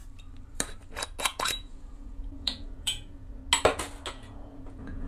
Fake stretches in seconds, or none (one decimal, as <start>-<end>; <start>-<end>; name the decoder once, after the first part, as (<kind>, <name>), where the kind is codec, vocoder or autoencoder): 1.2-3.4 (vocoder, Vocos); 4.1-5.1